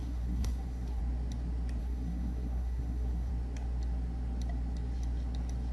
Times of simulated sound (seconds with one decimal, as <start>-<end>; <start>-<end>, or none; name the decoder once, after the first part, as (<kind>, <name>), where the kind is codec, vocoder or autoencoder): 0.0-1.0 (codec, SNAC); 1.8-3.3